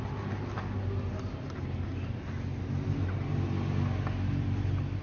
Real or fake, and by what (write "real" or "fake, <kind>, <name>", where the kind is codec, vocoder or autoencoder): real